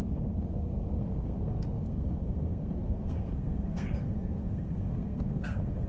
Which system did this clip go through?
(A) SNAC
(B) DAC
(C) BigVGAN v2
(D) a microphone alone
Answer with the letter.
A